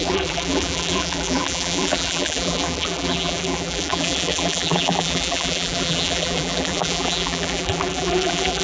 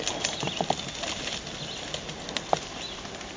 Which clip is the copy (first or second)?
first